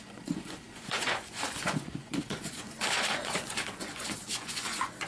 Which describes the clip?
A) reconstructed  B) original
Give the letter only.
A